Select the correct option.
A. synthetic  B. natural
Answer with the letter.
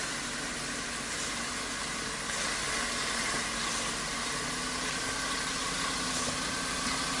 B